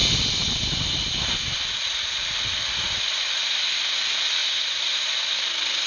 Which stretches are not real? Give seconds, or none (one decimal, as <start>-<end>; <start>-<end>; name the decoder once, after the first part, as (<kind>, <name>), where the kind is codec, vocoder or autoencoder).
4.4-5.2 (vocoder, BigVGAN v2)